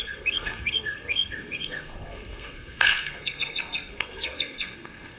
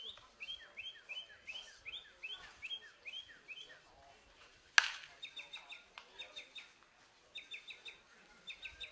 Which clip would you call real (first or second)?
second